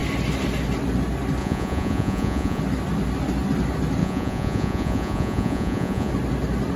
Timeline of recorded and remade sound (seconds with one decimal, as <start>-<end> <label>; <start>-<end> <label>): 0.0-1.4 recorded; 1.4-2.6 remade; 2.6-4.0 recorded; 4.0-6.1 remade; 6.1-6.8 recorded